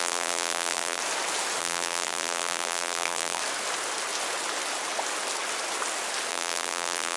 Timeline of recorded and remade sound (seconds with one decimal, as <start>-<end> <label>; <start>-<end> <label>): 0.0-1.0 remade; 1.0-1.6 recorded; 1.6-3.4 remade; 3.4-6.3 recorded; 6.3-7.2 remade